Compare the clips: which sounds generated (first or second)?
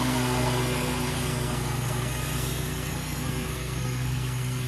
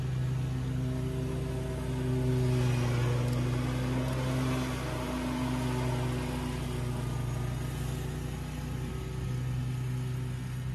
first